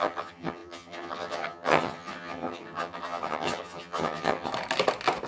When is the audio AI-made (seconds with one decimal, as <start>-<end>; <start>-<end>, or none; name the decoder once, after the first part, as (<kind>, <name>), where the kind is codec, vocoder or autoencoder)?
0.0-4.5 (vocoder, HiFi-GAN)